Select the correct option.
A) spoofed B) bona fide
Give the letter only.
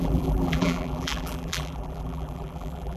A